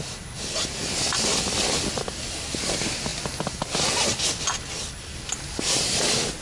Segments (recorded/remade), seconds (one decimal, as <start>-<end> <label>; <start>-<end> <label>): 0.0-6.4 recorded